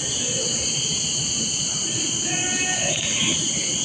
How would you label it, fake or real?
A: real